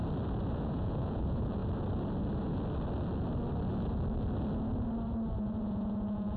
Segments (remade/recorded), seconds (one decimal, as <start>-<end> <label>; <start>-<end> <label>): 0.0-0.5 recorded; 0.5-1.6 remade; 1.6-5.4 recorded; 5.4-6.4 remade